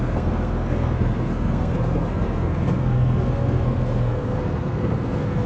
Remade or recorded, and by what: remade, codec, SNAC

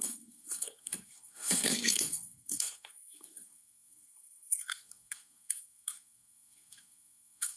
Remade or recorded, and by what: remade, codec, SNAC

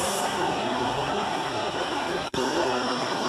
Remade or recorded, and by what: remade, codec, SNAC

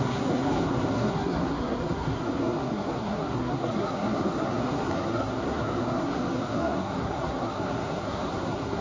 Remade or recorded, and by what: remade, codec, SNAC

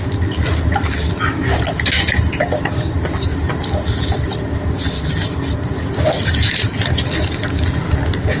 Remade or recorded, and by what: recorded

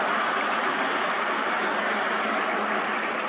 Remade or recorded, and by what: recorded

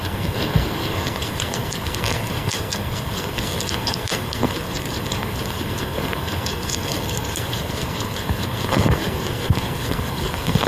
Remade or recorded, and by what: remade, codec, SNAC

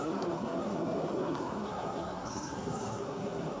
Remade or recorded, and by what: remade, codec, SNAC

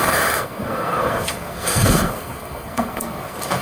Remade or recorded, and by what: remade, codec, SNAC